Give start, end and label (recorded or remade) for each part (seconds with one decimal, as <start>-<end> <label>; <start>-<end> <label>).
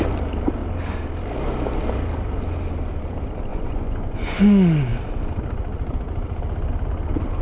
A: 0.0-3.5 recorded; 3.5-4.4 remade; 4.4-7.4 recorded